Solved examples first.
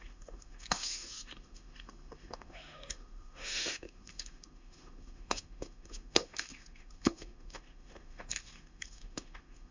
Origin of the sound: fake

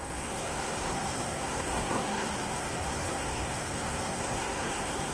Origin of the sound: fake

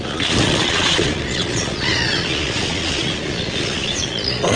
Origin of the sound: fake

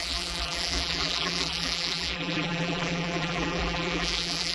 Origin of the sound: fake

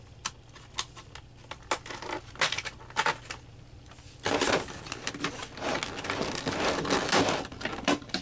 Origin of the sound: real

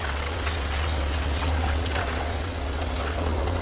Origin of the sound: fake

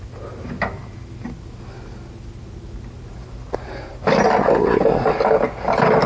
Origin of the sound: real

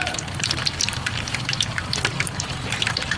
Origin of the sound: fake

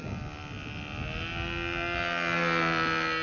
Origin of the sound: real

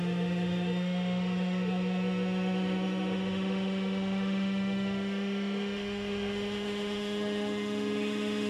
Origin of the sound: fake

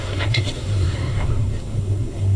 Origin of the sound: fake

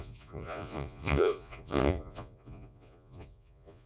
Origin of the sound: fake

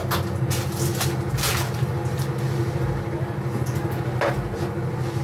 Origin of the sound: real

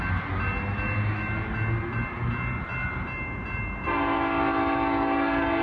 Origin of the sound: real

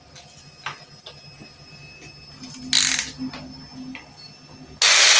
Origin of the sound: real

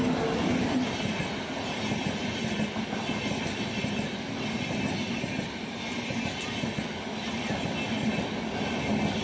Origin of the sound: real